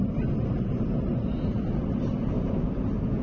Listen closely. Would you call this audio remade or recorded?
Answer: recorded